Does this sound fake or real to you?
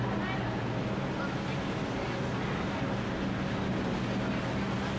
real